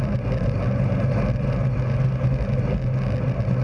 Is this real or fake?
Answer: real